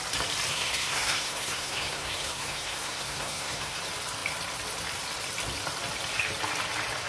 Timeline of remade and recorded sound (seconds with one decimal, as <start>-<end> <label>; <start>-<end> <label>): 0.0-0.5 recorded; 0.5-3.8 remade; 3.8-7.1 recorded